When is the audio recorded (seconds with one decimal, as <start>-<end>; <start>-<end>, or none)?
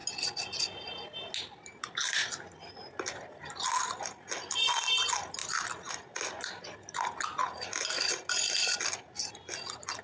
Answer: 0.0-10.0